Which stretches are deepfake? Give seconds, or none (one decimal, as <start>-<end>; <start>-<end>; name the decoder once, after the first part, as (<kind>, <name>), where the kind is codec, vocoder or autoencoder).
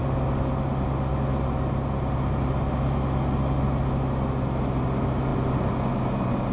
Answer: none